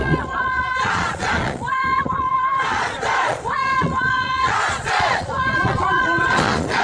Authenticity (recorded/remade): remade